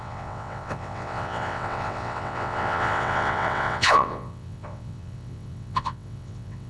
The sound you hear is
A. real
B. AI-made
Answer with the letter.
B